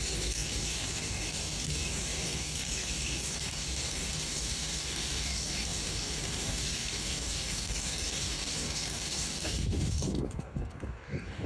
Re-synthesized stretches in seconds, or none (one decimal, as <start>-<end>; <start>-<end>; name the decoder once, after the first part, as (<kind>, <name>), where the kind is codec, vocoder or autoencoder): 0.0-11.5 (codec, DAC)